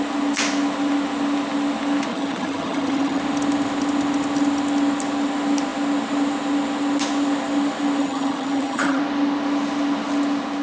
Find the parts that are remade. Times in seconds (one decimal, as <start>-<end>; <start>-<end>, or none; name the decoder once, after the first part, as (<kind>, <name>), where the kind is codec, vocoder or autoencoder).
2.1-3.2 (vocoder, HiFi-GAN); 8.0-9.0